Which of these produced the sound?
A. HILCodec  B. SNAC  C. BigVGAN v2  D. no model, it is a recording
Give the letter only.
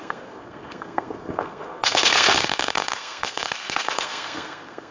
B